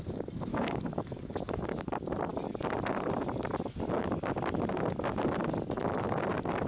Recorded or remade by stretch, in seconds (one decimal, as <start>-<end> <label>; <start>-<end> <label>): 0.0-0.5 recorded; 0.5-1.8 remade; 1.8-6.7 recorded